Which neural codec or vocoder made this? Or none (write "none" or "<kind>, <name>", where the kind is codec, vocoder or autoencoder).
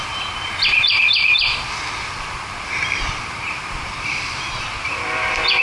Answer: vocoder, BigVGAN v2